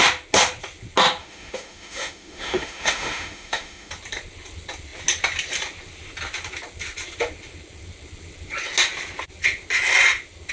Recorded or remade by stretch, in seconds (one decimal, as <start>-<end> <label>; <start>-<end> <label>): 0.0-1.2 recorded; 1.2-3.9 remade; 3.9-10.5 recorded